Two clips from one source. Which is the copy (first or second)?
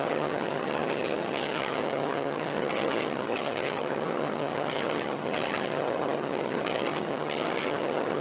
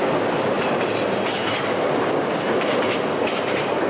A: first